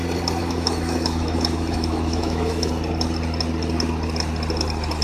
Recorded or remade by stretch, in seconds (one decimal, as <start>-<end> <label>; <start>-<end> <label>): 0.0-0.4 recorded; 0.4-2.7 remade; 2.7-5.0 recorded